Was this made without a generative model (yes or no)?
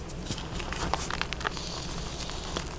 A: yes